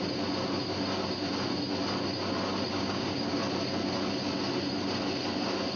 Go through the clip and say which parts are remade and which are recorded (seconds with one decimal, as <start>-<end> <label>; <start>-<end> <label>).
0.0-2.7 recorded; 2.7-3.4 remade; 3.4-5.8 recorded